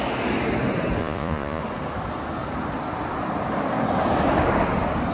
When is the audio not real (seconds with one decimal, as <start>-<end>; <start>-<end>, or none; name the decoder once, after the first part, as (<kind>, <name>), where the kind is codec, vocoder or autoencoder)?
1.0-1.6 (vocoder, Vocos)